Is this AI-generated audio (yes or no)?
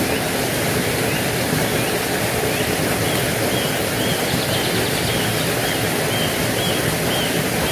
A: no